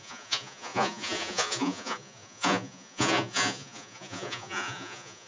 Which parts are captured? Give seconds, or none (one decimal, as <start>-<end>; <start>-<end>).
none